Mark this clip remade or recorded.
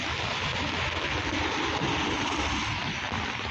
recorded